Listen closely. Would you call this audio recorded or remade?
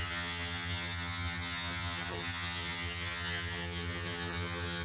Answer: remade